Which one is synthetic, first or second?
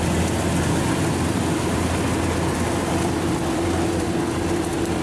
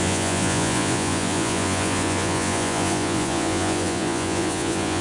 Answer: second